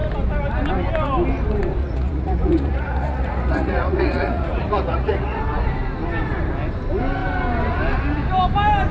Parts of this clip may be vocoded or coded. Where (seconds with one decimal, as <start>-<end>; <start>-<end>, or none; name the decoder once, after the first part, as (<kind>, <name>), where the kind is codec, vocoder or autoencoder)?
1.8-5.4 (vocoder, Vocos)